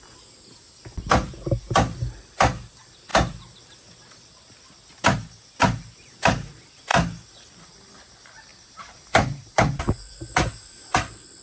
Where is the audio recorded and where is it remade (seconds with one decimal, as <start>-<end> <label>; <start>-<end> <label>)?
0.0-8.5 recorded; 8.5-9.7 remade; 9.7-11.4 recorded

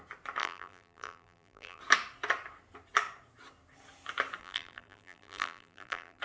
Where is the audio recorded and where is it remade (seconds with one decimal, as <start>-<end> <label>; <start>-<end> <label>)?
0.0-0.4 recorded; 0.4-1.8 remade; 1.8-4.4 recorded; 4.4-6.2 remade

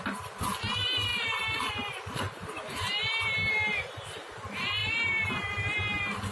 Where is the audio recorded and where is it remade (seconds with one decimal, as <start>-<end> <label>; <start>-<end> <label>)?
0.0-1.1 recorded; 1.1-2.5 remade; 2.5-6.3 recorded

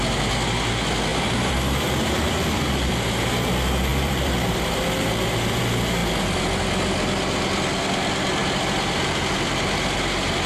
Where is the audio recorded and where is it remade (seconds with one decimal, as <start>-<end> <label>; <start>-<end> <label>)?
0.0-1.1 recorded; 1.1-2.9 remade; 2.9-3.9 recorded; 3.9-5.6 remade; 5.6-10.5 recorded